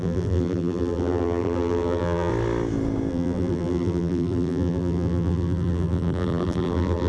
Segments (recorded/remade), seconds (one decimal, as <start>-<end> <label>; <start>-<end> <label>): 0.0-2.3 remade; 2.3-3.1 recorded; 3.1-7.1 remade